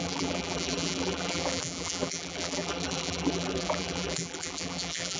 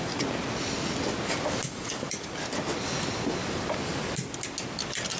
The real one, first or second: second